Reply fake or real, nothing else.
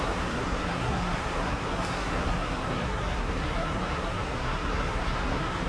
fake